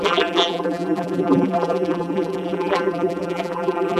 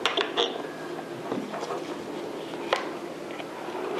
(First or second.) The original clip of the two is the second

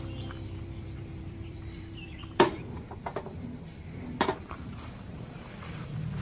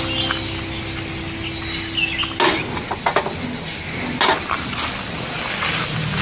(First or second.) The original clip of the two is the second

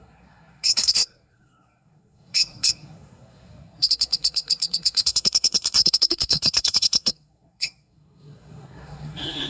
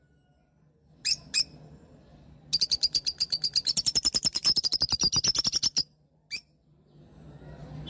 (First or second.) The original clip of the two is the second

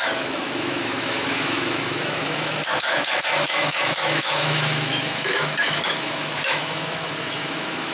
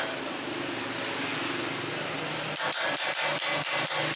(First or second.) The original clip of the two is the second